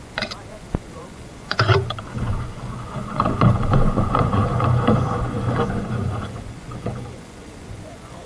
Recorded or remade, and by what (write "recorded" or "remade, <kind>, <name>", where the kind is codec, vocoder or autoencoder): remade, vocoder, Vocos